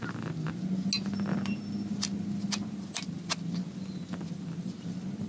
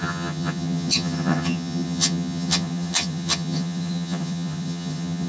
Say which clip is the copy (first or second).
second